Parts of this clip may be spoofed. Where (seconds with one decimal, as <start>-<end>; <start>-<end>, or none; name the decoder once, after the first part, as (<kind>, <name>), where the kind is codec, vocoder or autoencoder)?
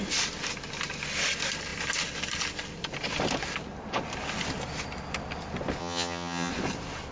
5.8-6.5 (vocoder, HiFi-GAN)